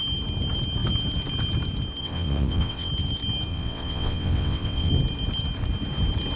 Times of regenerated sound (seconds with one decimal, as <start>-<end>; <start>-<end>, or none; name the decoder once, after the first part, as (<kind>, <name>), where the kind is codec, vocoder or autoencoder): 2.0-2.9 (vocoder, WaveNeXt); 3.5-4.9